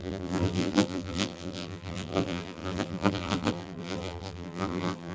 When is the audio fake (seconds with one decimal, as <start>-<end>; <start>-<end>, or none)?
0.0-5.1